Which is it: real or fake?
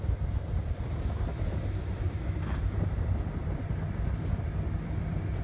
real